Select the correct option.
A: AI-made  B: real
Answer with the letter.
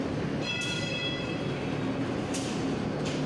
A